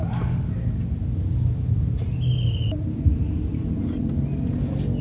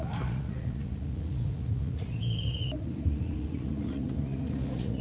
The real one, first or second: first